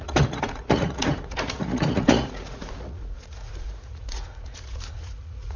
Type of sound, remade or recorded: remade